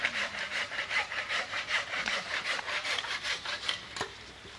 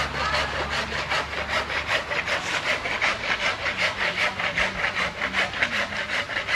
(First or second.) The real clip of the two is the second